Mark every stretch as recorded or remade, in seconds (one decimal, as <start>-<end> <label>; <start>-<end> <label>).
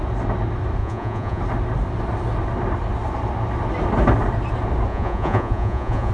0.0-0.8 recorded; 0.8-1.4 remade; 1.4-4.9 recorded; 4.9-6.1 remade